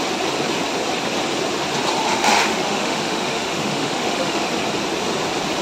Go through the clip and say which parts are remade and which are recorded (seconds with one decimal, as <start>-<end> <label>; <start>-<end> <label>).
0.0-2.1 recorded; 2.1-4.5 remade; 4.5-5.6 recorded